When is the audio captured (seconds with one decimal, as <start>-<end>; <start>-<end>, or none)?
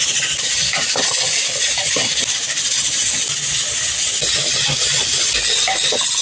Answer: 0.0-6.2